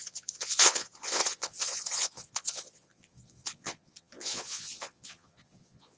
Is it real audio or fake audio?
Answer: fake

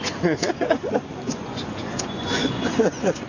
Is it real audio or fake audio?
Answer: fake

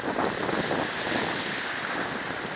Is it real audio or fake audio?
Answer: real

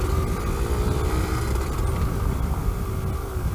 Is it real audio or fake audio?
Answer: real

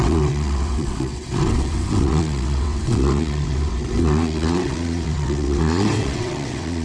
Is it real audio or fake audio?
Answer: fake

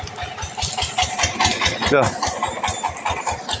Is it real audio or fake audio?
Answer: real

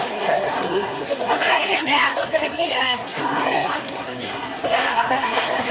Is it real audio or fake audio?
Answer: fake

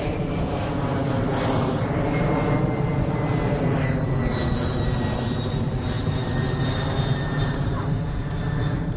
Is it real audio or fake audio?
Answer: real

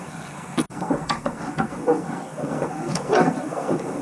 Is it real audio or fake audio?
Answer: fake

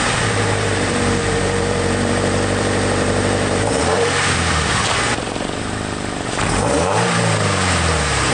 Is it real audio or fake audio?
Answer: fake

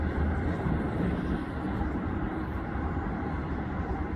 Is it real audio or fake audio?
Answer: fake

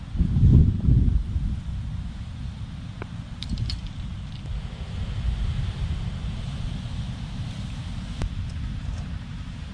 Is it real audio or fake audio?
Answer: real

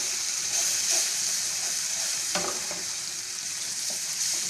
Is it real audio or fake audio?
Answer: fake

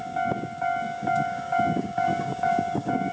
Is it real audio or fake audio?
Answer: fake